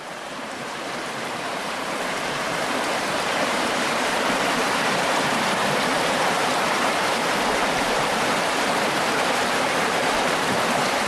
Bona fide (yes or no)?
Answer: no